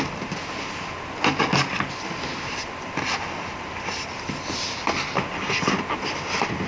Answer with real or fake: real